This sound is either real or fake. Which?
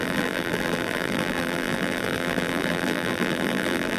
fake